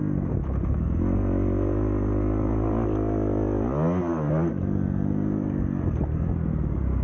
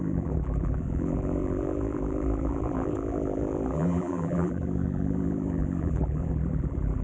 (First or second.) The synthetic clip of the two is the second